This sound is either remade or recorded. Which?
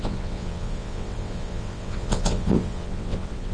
remade